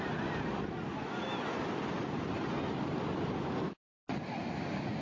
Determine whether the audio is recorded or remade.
recorded